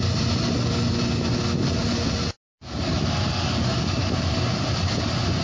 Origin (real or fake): real